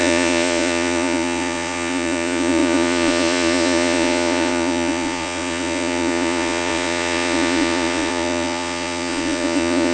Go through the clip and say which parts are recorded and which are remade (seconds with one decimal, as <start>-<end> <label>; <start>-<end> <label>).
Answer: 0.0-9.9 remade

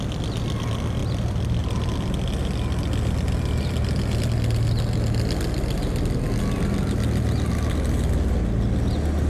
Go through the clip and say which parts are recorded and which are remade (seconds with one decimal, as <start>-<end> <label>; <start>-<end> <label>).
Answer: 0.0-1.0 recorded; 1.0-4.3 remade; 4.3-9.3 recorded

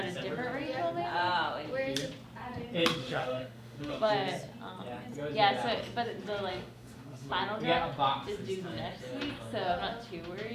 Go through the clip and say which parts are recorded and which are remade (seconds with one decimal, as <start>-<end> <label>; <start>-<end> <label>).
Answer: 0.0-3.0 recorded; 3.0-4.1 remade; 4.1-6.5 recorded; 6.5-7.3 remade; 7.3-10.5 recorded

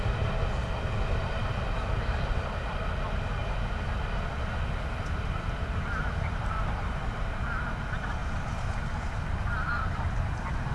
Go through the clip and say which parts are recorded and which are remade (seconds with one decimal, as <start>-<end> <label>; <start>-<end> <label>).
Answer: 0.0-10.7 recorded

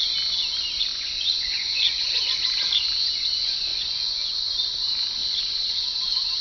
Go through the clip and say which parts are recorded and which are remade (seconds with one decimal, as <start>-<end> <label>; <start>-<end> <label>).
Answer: 0.0-0.9 recorded; 0.9-2.2 remade; 2.2-3.7 recorded; 3.7-4.3 remade; 4.3-5.2 recorded; 5.2-5.7 remade; 5.7-6.4 recorded